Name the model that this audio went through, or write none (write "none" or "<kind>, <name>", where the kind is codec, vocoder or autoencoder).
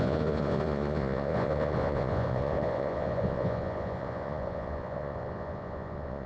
vocoder, Vocos